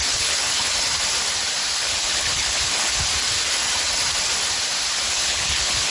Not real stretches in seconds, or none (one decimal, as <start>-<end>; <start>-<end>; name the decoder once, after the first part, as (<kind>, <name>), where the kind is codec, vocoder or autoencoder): 0.0-0.7 (codec, HILCodec); 1.7-3.1; 5.1-5.9

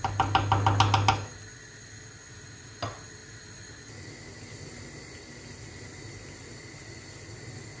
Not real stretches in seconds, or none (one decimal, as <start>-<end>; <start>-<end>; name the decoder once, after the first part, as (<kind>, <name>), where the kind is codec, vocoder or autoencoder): none

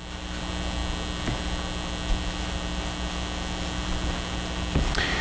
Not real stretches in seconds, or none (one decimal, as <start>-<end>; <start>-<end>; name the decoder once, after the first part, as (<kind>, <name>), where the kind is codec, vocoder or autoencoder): none

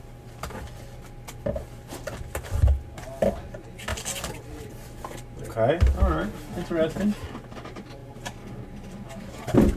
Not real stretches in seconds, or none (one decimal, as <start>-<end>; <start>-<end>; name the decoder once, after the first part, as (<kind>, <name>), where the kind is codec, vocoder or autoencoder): none